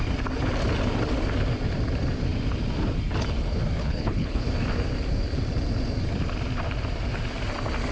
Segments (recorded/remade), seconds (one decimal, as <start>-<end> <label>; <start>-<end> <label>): 0.0-3.8 recorded; 3.8-4.5 remade; 4.5-7.9 recorded